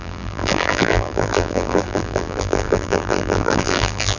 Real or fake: fake